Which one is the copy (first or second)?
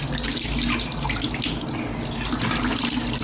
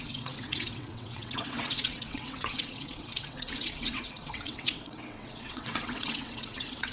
second